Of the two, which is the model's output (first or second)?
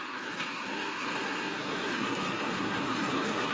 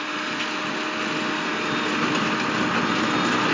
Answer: first